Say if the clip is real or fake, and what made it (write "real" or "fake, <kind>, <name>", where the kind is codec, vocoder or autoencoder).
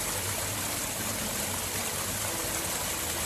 real